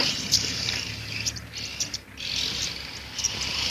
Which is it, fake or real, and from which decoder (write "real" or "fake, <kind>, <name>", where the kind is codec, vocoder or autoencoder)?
real